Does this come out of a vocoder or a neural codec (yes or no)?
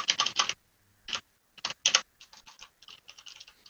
no